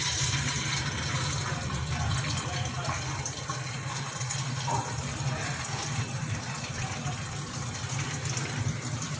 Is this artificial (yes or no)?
yes